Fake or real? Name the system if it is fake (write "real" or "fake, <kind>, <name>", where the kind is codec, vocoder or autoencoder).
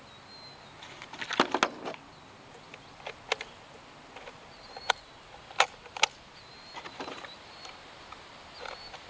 real